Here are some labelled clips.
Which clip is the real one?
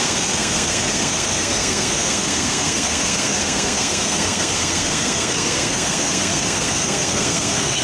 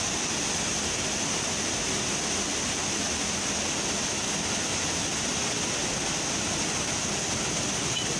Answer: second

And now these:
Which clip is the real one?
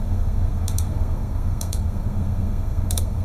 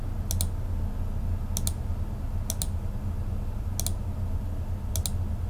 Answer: second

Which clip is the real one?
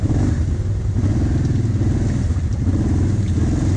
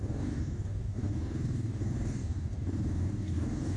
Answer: first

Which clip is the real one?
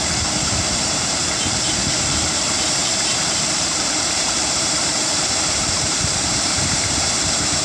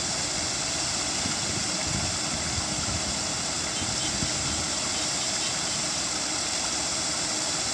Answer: second